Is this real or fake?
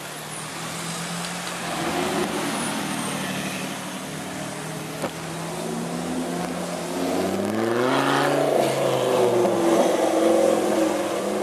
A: real